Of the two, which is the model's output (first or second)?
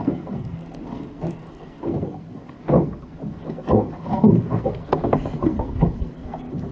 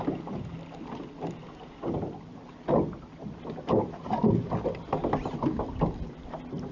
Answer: first